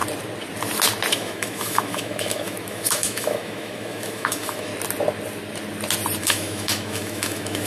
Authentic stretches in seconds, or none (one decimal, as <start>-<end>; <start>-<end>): 0.0-1.1; 4.7-6.2